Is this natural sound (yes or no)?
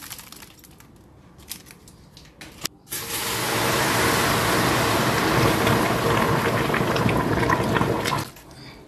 yes